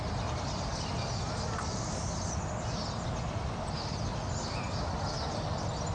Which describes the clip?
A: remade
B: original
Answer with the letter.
B